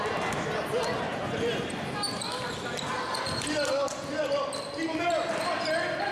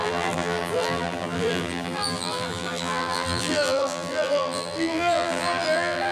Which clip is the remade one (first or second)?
second